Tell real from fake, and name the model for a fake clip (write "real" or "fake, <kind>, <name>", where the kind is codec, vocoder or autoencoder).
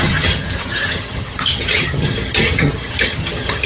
fake, vocoder, HiFi-GAN